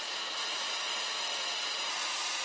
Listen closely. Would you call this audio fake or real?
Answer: real